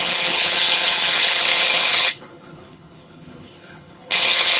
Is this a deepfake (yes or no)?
yes